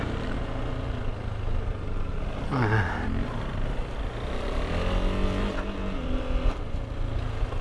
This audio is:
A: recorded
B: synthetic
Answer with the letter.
A